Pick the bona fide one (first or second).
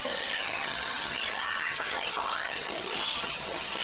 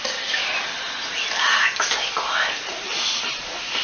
second